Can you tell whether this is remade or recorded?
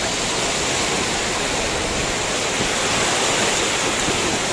recorded